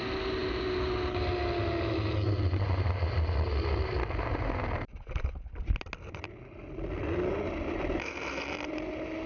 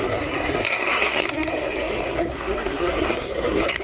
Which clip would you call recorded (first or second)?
first